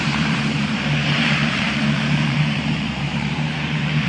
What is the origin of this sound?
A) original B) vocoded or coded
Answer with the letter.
B